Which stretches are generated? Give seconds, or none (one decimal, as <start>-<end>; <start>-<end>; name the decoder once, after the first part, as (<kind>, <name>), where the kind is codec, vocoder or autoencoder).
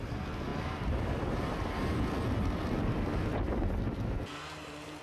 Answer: none